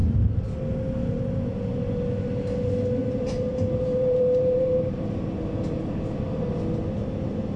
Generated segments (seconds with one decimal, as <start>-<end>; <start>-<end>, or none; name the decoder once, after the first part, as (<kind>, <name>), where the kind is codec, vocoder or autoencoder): 3.0-5.4 (vocoder, BigVGAN v2)

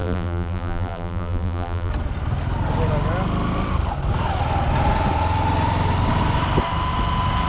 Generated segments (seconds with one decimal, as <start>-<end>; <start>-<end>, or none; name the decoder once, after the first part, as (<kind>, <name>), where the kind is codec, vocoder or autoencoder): 0.0-1.9 (vocoder, BigVGAN v2)